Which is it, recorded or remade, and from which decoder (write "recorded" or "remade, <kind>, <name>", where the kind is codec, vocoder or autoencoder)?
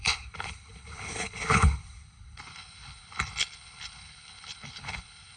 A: remade, codec, HILCodec